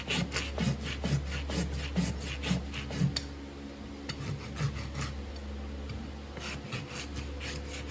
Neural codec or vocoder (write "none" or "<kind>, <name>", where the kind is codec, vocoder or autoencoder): none